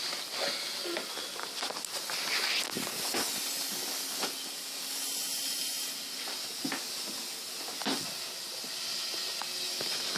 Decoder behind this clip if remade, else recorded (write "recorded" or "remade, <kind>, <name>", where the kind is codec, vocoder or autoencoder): recorded